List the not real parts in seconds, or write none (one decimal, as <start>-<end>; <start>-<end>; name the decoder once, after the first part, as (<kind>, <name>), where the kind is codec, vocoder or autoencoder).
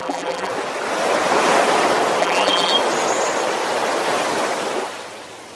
0.0-0.5 (vocoder, BigVGAN v2); 2.2-2.7